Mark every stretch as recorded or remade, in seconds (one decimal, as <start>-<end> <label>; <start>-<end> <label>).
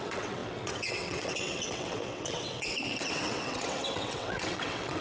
0.0-5.0 remade